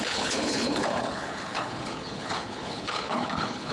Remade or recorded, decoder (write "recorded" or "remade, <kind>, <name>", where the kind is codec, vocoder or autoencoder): remade, codec, HILCodec